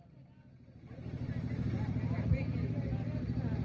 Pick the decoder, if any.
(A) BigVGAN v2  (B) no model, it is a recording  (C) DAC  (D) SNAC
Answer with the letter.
B